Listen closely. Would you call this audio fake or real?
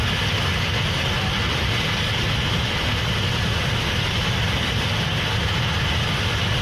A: real